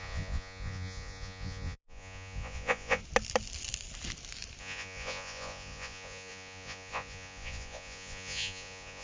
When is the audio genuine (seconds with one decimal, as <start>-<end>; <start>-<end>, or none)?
3.0-4.6